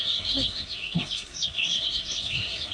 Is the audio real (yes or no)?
no